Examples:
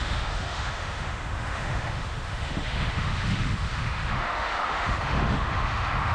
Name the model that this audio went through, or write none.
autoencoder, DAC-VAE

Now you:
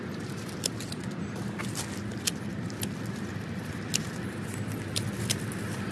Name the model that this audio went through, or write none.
none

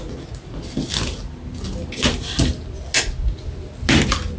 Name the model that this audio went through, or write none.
none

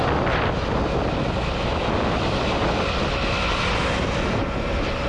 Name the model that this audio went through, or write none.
none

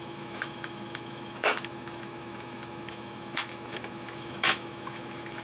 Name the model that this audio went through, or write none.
autoencoder, DAC-VAE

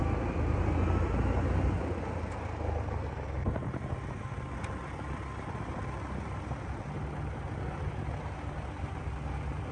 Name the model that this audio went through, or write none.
none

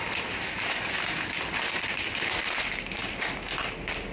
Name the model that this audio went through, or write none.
none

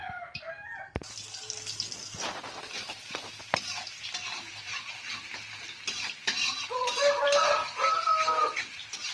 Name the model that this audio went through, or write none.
none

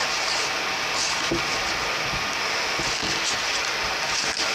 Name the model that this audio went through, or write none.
none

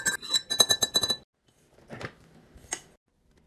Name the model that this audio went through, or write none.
none